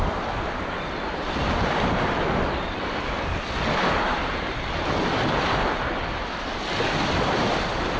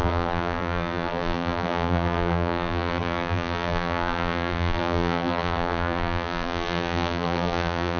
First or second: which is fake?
second